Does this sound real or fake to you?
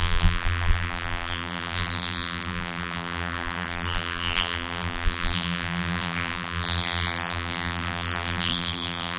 fake